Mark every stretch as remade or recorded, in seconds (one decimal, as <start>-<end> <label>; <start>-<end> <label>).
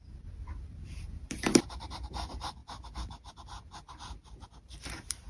0.0-2.6 remade; 2.6-3.3 recorded; 3.3-5.3 remade